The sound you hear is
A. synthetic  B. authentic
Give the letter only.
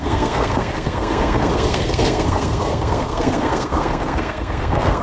A